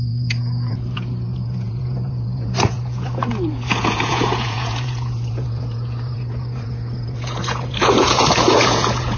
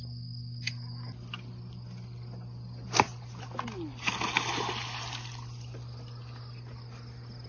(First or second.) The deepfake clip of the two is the first